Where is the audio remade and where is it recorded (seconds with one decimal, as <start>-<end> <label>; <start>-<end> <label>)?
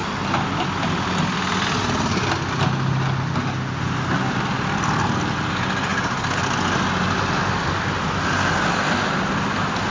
0.0-9.9 recorded